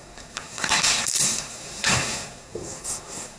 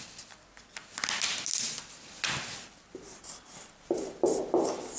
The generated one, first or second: first